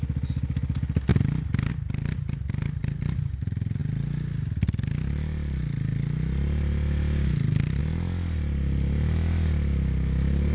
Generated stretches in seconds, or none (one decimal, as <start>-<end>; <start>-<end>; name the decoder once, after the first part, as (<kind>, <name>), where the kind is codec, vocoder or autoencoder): none